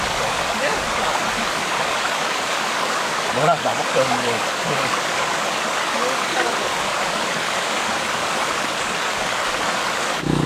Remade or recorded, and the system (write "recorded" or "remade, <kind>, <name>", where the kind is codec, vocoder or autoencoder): remade, codec, DAC